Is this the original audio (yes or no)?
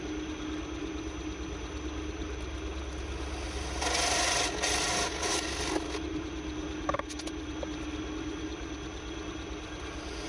yes